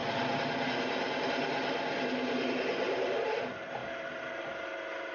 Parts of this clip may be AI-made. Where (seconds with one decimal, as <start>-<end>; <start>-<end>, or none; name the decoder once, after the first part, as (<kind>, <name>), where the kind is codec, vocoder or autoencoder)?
none